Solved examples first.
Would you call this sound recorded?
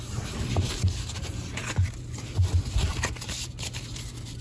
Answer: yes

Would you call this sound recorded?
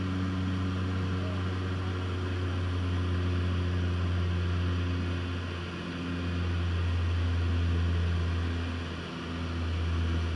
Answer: yes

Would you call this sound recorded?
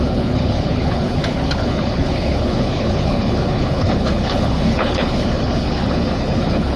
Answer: no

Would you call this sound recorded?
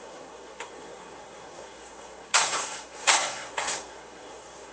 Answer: no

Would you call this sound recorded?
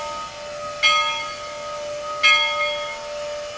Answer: yes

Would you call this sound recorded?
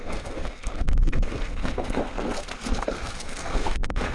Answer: no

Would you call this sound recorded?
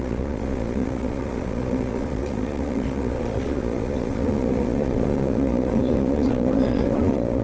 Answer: no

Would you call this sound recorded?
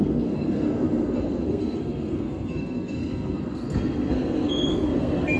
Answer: no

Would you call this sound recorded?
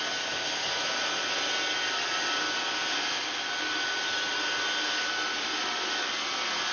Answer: yes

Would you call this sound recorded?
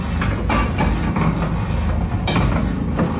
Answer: yes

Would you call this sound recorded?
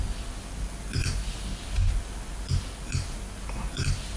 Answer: yes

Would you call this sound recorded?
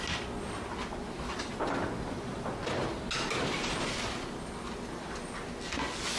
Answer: yes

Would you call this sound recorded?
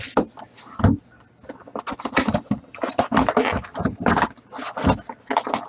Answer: yes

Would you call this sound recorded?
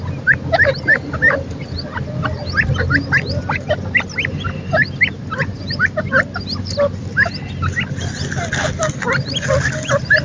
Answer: yes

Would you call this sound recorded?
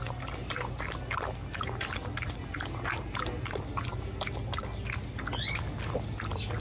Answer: yes